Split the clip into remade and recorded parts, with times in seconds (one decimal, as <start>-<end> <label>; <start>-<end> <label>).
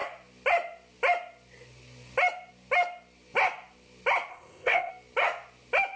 0.0-4.3 recorded; 4.3-4.9 remade; 4.9-6.0 recorded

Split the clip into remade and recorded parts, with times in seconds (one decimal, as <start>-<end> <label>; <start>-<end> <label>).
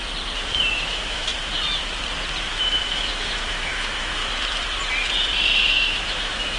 0.0-0.7 recorded; 0.7-1.3 remade; 1.3-2.5 recorded; 2.5-4.2 remade; 4.2-5.7 recorded; 5.7-6.6 remade